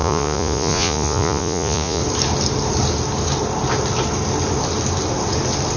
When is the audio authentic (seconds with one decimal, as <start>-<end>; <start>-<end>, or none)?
2.0-5.8